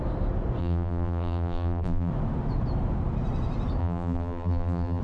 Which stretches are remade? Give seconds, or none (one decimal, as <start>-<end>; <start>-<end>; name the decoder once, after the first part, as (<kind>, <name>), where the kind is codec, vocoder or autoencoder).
0.6-2.1 (vocoder, BigVGAN v2); 3.8-5.0